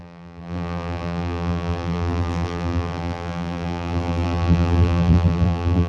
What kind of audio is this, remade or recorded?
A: remade